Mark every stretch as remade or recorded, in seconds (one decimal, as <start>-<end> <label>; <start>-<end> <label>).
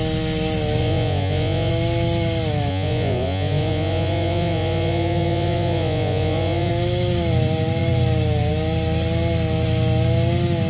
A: 0.0-0.8 recorded; 0.8-1.7 remade; 1.7-2.7 recorded; 2.7-6.7 remade; 6.7-10.7 recorded